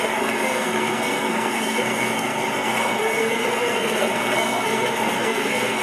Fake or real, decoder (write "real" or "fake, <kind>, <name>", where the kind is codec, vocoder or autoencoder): fake, codec, SNAC